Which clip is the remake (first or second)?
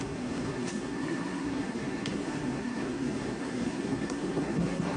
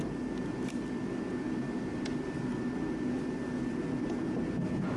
first